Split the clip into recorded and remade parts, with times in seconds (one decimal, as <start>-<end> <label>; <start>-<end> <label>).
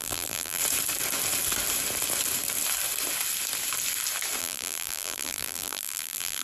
0.0-0.6 remade; 0.6-4.4 recorded; 4.4-6.4 remade